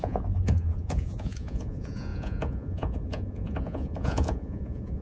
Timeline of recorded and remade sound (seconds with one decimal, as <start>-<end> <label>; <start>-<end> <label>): 0.0-5.0 remade

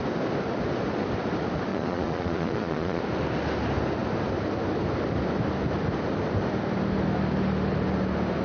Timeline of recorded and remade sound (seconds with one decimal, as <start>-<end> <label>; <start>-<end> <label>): 0.0-1.7 recorded; 1.7-3.0 remade; 3.0-8.4 recorded

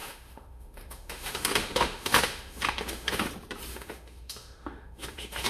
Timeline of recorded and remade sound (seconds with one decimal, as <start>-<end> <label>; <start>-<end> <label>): 0.0-3.3 remade; 3.3-3.7 recorded; 3.7-5.5 remade

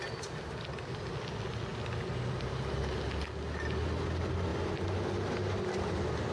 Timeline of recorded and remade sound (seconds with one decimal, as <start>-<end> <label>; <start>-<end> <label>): 0.0-6.3 recorded